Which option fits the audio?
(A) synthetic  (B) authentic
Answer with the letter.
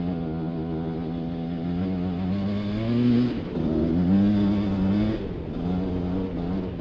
B